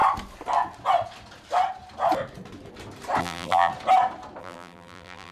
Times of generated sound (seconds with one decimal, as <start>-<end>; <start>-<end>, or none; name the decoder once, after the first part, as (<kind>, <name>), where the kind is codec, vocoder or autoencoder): 3.2-3.7 (vocoder, BigVGAN v2); 4.4-5.3

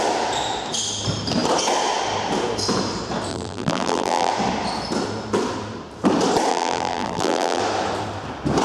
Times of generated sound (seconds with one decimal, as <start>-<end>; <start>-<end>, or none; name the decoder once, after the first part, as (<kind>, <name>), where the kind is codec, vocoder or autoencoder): 3.3-4.3 (vocoder, BigVGAN v2); 6.5-7.6